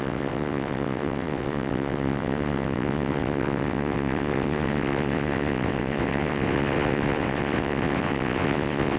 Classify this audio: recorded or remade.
remade